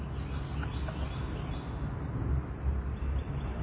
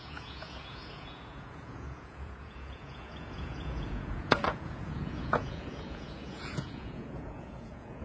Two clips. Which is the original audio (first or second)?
first